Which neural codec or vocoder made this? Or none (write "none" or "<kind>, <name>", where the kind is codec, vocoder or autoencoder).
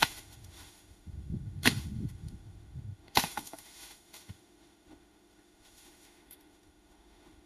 autoencoder, DAC-VAE